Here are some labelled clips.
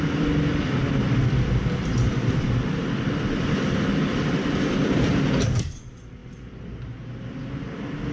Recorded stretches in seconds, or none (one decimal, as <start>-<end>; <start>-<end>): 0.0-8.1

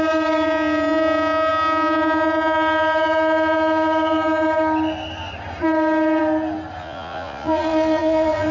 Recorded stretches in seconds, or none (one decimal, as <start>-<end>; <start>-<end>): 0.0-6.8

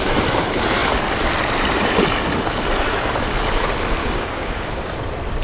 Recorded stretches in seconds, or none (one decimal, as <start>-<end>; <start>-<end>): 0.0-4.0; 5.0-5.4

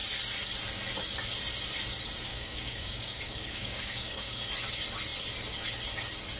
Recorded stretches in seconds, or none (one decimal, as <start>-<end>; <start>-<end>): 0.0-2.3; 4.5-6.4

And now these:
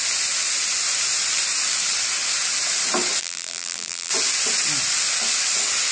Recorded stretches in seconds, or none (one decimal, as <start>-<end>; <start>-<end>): 0.0-3.2; 4.1-5.9

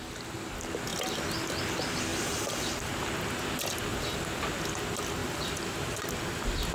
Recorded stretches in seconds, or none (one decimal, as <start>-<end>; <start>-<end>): 0.0-0.9; 1.6-2.1; 3.0-3.9; 4.4-5.2; 6.0-6.7

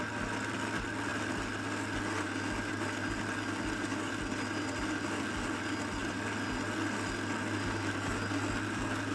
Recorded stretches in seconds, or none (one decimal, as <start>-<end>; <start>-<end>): 0.0-9.1